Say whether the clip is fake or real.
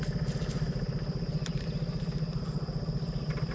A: real